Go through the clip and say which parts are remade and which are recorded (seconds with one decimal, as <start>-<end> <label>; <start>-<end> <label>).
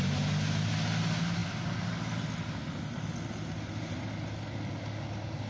0.0-5.5 recorded